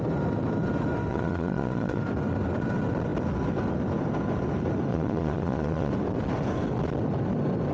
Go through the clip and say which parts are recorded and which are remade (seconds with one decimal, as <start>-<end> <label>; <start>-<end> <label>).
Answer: 0.0-1.1 recorded; 1.1-2.0 remade; 2.0-4.9 recorded; 4.9-5.9 remade; 5.9-7.7 recorded